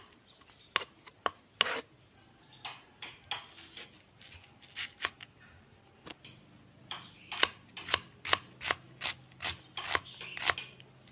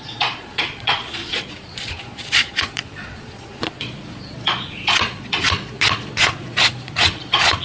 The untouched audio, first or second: first